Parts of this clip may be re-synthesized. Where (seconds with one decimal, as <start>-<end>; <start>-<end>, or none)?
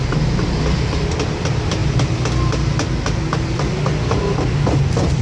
none